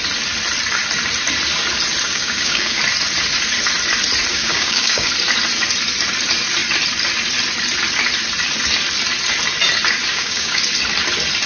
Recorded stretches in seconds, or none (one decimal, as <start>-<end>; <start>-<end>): 0.0-2.0; 2.8-4.3; 5.1-10.1; 10.6-11.5